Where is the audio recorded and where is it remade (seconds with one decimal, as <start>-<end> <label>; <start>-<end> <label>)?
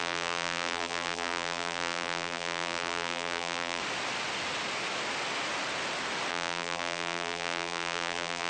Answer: 0.0-3.8 remade; 3.8-6.3 recorded; 6.3-8.5 remade